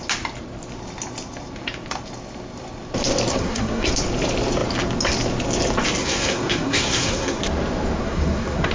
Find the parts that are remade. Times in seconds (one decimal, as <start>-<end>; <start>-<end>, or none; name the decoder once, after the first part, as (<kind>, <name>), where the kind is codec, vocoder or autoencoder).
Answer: 3.3-3.9 (codec, SNAC); 6.0-7.4; 8.0-8.7